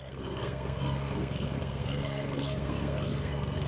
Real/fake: fake